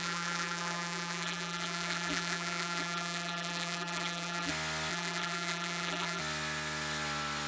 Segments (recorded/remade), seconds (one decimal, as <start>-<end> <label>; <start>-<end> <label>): 0.0-4.5 remade; 4.5-4.9 recorded; 4.9-6.2 remade; 6.2-7.5 recorded